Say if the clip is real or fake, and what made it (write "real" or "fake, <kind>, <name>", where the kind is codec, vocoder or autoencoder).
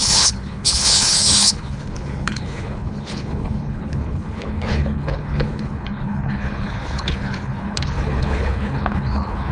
fake, codec, HILCodec